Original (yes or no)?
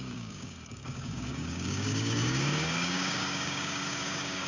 no